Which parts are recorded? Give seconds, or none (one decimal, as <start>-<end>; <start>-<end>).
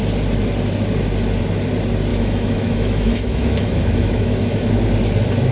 0.0-2.1; 4.7-5.5